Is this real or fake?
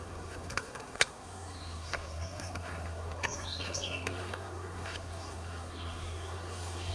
fake